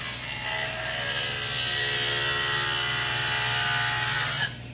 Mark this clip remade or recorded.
recorded